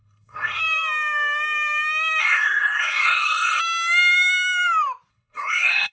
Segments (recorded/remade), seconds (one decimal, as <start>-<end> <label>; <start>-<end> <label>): 0.0-0.6 remade; 0.6-2.2 recorded; 2.2-3.6 remade; 3.6-5.1 recorded; 5.1-5.9 remade